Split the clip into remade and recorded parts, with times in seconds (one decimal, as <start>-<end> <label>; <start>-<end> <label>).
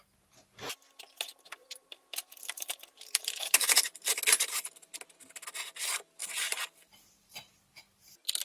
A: 0.0-1.6 recorded; 1.6-4.7 remade; 4.7-6.2 recorded; 6.2-7.3 remade; 7.3-8.4 recorded